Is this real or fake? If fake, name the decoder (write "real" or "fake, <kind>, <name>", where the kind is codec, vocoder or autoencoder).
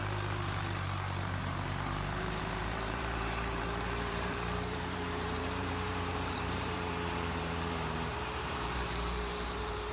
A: fake, vocoder, BigVGAN v2